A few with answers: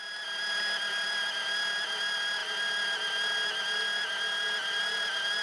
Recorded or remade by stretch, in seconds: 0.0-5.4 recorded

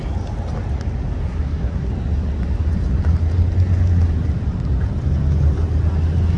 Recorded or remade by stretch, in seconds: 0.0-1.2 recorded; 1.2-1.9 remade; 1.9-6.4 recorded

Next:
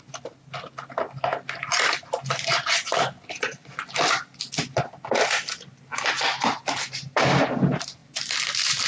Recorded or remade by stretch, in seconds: 0.0-8.9 recorded